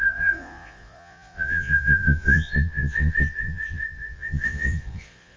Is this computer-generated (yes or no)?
yes